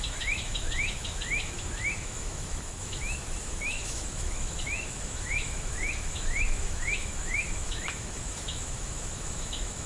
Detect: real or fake fake